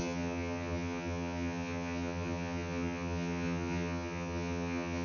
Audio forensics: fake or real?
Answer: fake